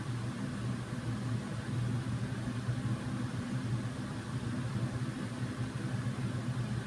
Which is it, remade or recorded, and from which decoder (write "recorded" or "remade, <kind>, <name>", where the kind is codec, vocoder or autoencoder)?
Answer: recorded